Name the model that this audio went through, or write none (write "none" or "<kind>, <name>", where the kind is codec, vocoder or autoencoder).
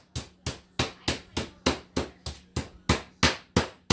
none